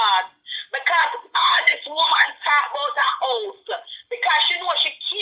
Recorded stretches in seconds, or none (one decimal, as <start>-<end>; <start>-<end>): 0.0-1.0; 2.5-3.0; 4.3-5.2